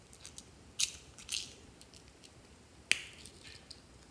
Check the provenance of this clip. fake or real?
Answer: real